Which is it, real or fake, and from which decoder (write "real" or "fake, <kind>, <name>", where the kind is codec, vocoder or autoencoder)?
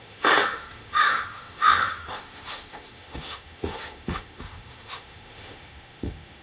fake, autoencoder, DAC-VAE